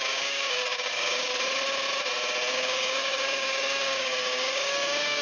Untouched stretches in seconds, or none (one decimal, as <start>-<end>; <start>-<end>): 1.3-2.5